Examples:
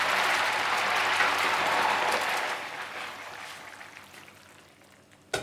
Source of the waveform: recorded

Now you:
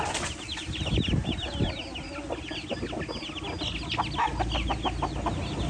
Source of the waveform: recorded